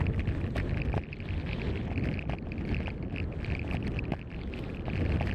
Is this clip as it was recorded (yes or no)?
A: yes